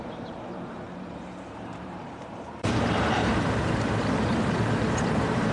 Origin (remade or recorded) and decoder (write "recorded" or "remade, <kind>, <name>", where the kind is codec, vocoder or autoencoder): remade, vocoder, BigVGAN v2